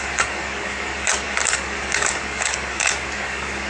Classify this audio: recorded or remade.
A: remade